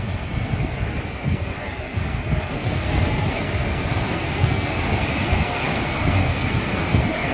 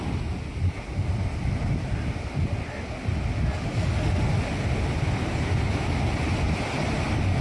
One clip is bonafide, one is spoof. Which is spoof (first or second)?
first